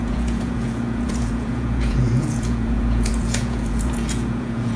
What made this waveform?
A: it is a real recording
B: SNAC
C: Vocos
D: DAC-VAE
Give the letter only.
C